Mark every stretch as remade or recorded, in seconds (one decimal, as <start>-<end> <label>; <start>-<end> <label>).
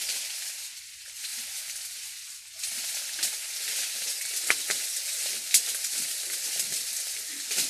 0.0-1.3 remade; 1.3-5.9 recorded; 5.9-7.7 remade